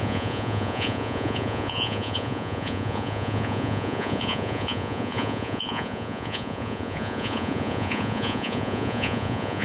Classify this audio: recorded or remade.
remade